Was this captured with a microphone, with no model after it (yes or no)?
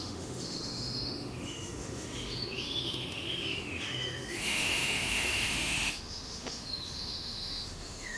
no